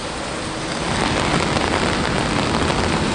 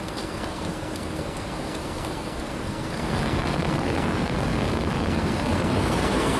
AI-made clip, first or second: second